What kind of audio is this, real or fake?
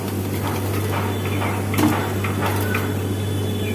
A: real